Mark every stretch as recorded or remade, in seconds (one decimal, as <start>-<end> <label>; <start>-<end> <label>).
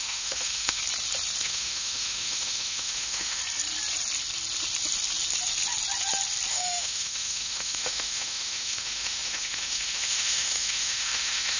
0.0-0.8 remade; 0.8-1.4 recorded; 1.4-3.4 remade; 3.4-6.5 recorded; 6.5-11.6 remade